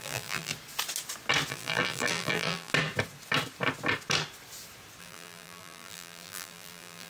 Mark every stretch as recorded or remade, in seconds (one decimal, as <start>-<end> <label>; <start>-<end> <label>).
0.0-0.5 remade; 0.5-1.5 recorded; 1.5-2.7 remade; 2.7-5.0 recorded; 5.0-7.1 remade